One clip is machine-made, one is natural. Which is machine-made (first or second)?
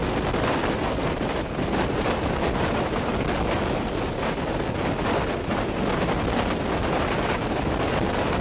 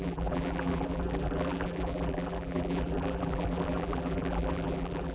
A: second